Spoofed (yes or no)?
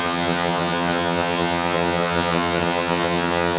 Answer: yes